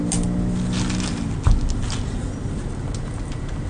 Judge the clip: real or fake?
real